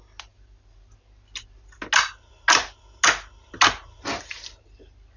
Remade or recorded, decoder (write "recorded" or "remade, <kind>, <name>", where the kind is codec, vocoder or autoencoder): recorded